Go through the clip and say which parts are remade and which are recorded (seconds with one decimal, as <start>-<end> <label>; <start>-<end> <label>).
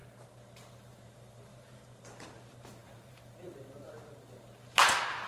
0.0-0.8 recorded; 0.8-5.3 remade